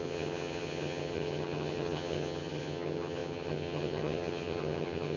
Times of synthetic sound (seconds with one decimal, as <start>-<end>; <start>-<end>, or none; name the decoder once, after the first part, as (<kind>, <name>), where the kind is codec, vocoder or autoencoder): 0.0-5.2 (vocoder, HiFi-GAN)